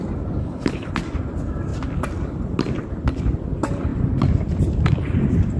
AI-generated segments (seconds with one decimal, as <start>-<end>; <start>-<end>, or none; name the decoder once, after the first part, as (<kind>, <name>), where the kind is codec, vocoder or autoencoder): 0.4-0.9 (codec, HILCodec)